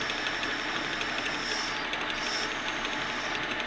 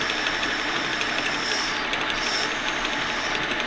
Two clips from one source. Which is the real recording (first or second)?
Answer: first